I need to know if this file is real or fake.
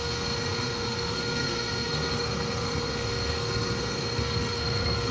fake